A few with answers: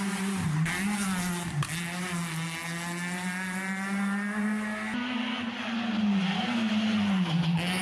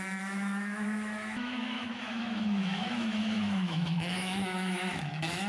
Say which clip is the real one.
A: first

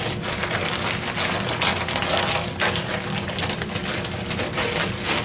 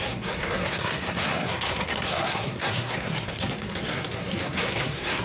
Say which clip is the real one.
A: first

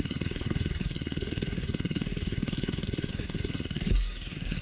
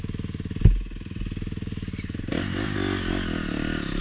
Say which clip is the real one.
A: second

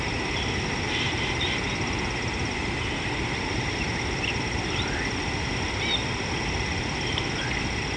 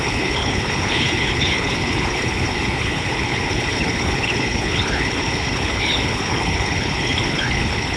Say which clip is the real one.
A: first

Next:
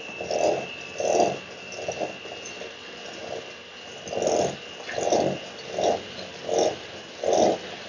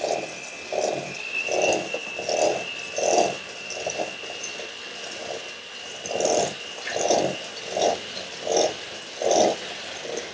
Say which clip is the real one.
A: first